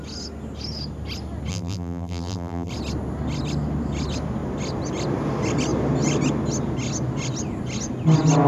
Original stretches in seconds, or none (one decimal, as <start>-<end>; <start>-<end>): 0.0-1.5; 2.7-8.5